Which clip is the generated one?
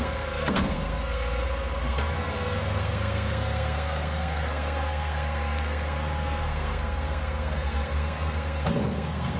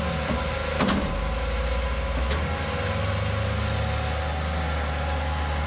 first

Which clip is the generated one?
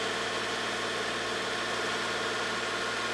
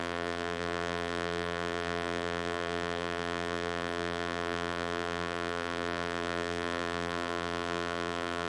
second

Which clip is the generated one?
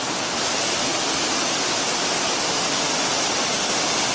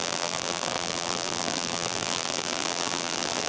second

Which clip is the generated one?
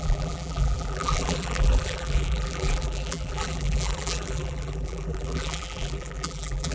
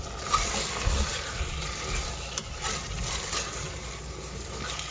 first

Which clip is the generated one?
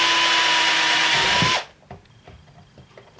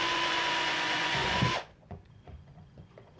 second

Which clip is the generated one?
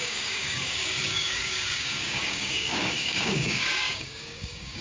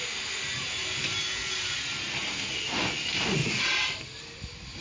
first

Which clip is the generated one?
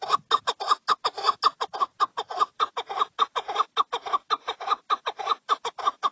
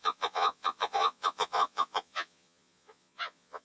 second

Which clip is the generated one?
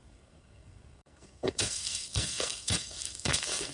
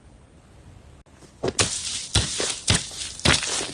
first